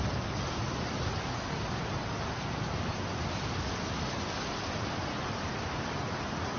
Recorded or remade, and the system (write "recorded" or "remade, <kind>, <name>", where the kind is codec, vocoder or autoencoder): recorded